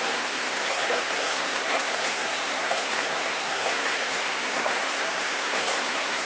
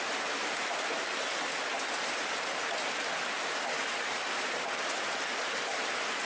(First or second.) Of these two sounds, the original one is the second